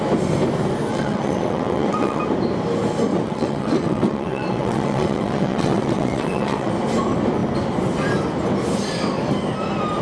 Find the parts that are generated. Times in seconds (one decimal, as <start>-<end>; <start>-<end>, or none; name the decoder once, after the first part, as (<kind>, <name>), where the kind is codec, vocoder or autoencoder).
0.9-2.2 (vocoder, WaveNeXt); 3.1-6.7